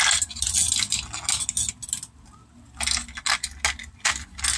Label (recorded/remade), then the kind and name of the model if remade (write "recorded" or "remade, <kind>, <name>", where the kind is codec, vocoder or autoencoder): recorded